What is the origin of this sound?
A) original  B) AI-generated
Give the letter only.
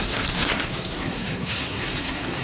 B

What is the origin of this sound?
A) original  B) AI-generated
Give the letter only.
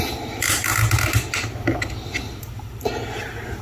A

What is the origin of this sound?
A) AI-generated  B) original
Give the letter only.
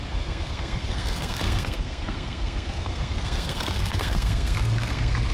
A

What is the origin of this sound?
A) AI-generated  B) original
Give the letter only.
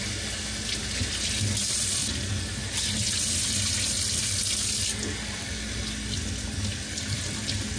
B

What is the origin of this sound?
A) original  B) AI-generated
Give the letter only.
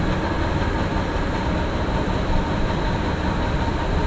A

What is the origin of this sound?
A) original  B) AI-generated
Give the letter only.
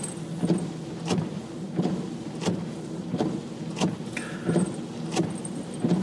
A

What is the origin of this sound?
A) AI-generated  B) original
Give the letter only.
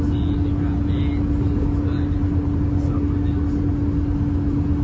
B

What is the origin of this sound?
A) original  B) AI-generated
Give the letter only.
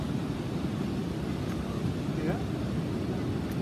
A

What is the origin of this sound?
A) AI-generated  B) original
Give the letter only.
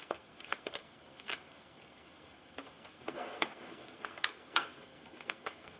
A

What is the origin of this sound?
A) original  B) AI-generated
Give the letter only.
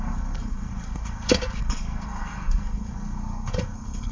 B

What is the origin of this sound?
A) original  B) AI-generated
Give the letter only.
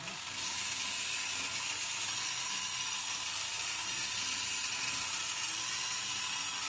A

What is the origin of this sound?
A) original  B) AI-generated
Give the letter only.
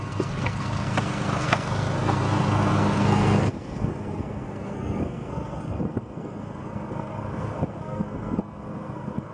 B